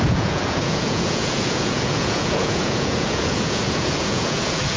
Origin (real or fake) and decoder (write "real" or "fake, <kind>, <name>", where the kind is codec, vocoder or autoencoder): fake, vocoder, Vocos